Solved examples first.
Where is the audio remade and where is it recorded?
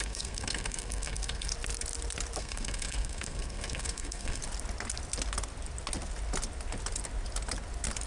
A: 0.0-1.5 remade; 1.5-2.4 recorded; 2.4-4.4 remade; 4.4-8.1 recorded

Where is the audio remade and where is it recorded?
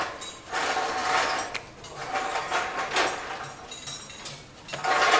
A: 0.0-5.2 recorded